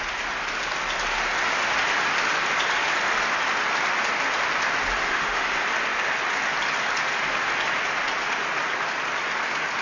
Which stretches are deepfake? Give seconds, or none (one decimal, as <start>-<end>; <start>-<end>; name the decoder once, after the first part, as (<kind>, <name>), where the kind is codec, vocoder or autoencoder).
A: 5.0-5.5 (autoencoder, DAC-VAE)